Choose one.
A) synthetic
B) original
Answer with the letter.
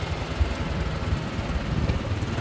B